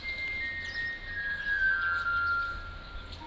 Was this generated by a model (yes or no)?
no